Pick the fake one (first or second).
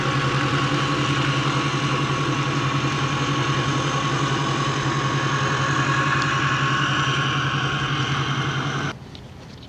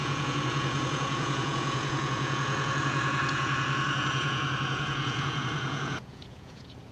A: second